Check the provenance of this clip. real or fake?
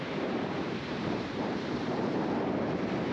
fake